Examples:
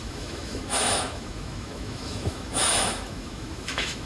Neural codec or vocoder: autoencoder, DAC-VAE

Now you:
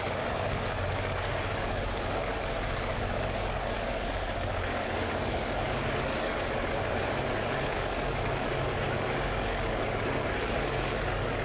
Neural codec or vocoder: codec, DAC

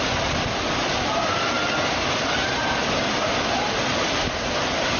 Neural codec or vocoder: none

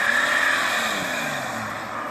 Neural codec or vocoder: none